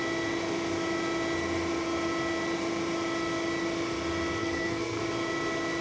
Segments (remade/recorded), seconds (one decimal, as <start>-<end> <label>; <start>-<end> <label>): 0.0-4.4 recorded; 4.4-5.0 remade; 5.0-5.8 recorded